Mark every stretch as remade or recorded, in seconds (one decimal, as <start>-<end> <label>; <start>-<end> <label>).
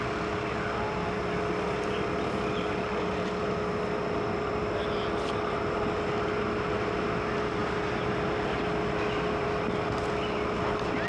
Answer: 0.0-11.1 recorded